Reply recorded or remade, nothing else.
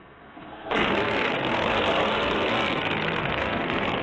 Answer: remade